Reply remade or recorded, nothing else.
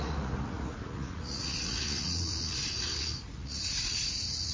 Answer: remade